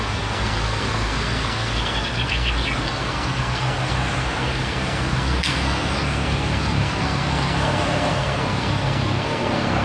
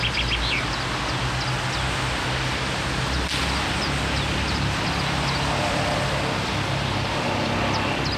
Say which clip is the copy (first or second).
first